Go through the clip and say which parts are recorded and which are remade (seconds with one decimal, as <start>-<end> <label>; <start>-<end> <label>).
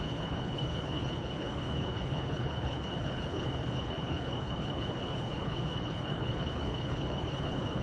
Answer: 0.0-7.8 remade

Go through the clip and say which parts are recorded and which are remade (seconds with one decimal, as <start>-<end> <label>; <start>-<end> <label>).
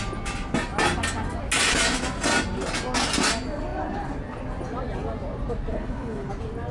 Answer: 0.0-5.7 recorded; 5.7-6.3 remade; 6.3-6.7 recorded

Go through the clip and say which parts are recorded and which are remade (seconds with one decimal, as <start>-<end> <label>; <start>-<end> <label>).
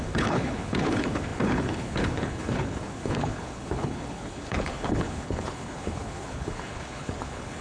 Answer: 0.0-7.6 remade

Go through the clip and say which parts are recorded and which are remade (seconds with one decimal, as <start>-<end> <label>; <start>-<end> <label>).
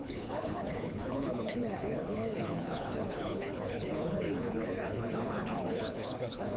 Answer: 0.0-6.6 remade